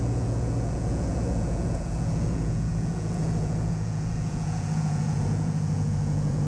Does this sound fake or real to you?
fake